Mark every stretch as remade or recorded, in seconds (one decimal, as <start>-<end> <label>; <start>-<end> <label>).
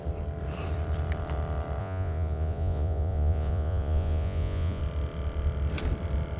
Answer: 0.0-1.8 recorded; 1.8-4.8 remade; 4.8-6.4 recorded